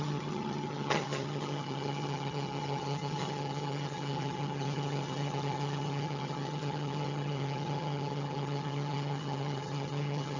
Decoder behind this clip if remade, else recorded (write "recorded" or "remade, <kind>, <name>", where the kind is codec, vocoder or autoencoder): remade, vocoder, HiFi-GAN